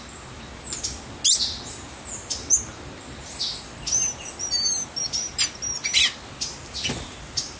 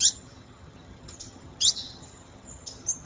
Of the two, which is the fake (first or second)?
second